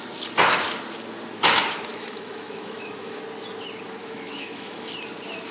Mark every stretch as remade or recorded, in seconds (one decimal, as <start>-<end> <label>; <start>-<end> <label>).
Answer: 0.0-1.9 recorded; 1.9-3.2 remade; 3.2-4.0 recorded; 4.0-4.9 remade; 4.9-5.5 recorded

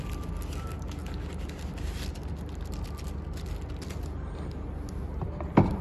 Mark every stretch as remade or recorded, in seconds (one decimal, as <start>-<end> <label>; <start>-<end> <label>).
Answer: 0.0-5.8 recorded

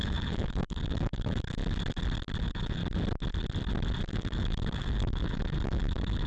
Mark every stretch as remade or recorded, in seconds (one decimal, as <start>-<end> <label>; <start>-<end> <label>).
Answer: 0.0-1.6 remade; 1.6-2.4 recorded; 2.4-2.8 remade; 2.8-4.1 recorded; 4.1-6.3 remade

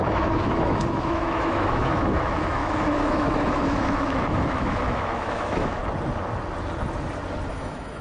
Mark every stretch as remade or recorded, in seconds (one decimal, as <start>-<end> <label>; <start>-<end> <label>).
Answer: 0.0-5.8 remade; 5.8-7.5 recorded; 7.5-8.0 remade

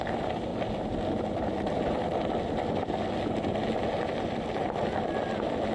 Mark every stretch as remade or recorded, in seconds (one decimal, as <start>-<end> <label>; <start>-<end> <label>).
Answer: 0.0-5.7 recorded

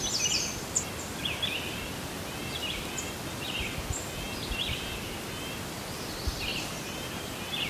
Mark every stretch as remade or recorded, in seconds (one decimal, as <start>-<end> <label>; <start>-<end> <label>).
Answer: 0.0-7.7 recorded

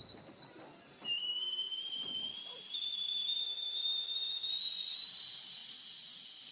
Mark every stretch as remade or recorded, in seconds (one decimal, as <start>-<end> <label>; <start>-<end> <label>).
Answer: 0.0-1.2 recorded; 1.2-1.7 remade; 1.7-3.4 recorded; 3.4-4.5 remade; 4.5-6.5 recorded